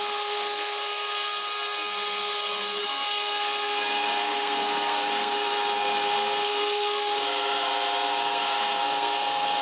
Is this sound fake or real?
fake